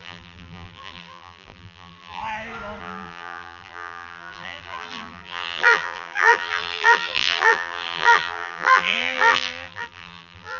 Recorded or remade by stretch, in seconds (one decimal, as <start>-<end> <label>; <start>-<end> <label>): 0.0-2.2 remade; 2.2-2.8 recorded; 2.8-10.6 remade